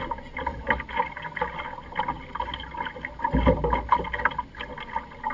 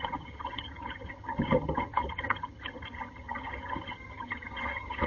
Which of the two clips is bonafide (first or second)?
first